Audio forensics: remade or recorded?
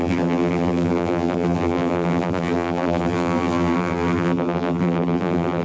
remade